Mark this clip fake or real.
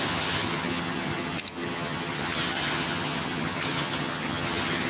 fake